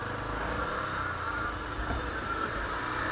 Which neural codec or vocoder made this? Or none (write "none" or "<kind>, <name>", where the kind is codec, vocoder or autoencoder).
none